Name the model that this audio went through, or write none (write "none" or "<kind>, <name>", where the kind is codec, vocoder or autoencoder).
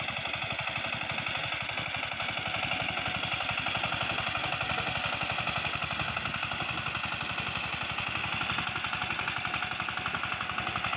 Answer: none